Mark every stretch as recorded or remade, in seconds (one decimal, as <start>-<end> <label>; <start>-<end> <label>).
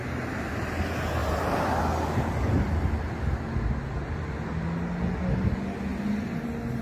0.0-1.2 recorded; 1.2-1.8 remade; 1.8-6.8 recorded